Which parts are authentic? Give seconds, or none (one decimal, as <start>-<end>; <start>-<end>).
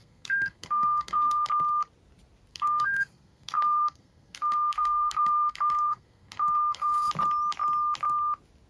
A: 1.5-2.5; 7.1-8.7